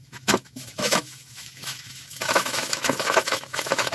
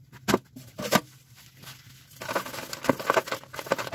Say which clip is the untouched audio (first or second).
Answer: second